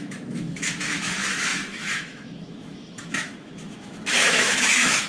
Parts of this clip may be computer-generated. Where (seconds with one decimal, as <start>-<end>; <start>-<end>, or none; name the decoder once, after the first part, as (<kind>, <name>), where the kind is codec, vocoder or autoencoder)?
0.0-5.1 (autoencoder, DAC-VAE)